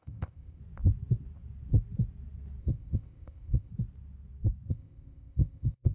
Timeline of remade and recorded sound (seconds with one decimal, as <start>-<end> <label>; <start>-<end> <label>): 0.0-0.6 remade; 0.6-2.6 recorded; 2.6-3.7 remade; 3.7-4.7 recorded; 4.7-5.9 remade